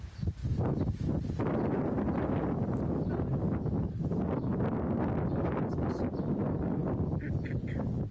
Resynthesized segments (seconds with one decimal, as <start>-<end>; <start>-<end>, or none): 0.4-2.8; 4.5-5.1; 6.8-8.1